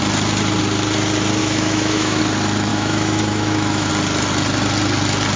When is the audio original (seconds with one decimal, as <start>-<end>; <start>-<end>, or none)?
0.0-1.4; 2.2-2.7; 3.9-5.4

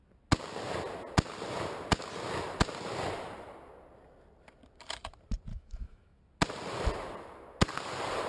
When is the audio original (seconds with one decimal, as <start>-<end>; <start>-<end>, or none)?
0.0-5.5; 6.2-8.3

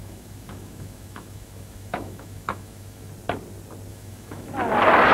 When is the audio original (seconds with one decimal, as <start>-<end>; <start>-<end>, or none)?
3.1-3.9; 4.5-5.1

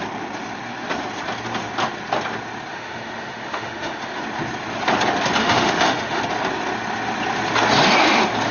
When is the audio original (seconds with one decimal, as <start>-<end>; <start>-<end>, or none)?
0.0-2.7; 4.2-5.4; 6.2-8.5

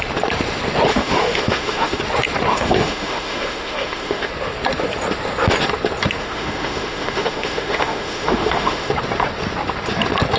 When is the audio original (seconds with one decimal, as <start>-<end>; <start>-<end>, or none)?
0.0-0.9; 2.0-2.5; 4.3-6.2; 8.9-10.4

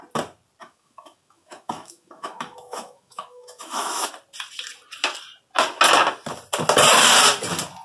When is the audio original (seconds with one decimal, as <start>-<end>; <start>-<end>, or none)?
0.0-0.6; 4.1-7.8

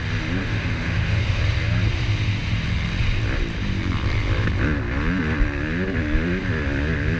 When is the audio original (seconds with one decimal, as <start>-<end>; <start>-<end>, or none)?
0.0-0.4; 1.4-7.2

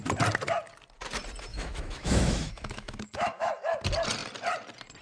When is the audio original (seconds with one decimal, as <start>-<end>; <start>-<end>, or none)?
0.0-1.5; 3.8-5.0